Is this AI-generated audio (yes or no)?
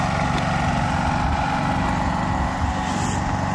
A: no